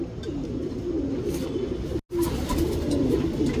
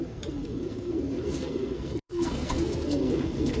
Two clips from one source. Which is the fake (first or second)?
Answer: second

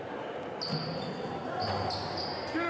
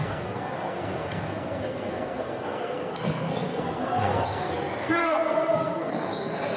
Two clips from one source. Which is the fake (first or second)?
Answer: second